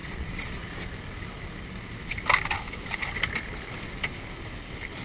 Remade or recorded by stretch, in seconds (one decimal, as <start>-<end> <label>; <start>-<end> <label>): 0.0-0.7 remade; 0.7-5.0 recorded